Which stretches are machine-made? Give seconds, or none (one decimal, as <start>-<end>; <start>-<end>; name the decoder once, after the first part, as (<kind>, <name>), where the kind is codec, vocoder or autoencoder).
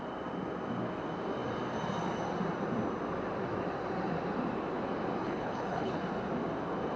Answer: 5.2-6.0 (codec, HILCodec)